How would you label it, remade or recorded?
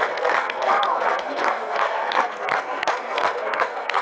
remade